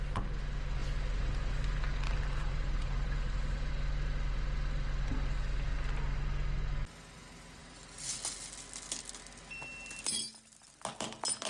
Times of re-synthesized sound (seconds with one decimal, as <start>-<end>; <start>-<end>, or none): 0.8-3.7